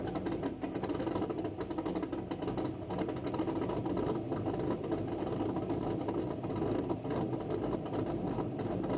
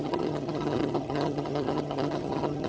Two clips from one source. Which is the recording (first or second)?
first